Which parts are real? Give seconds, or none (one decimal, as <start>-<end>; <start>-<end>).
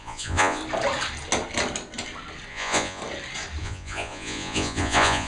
0.6-2.5; 3.0-3.6